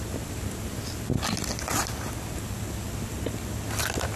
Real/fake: real